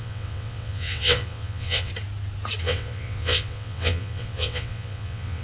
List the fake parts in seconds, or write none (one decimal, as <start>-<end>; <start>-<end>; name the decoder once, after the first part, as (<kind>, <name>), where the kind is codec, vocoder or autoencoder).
0.0-1.9 (vocoder, WaveNeXt); 2.6-5.4